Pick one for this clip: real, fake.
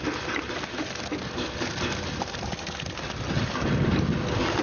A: real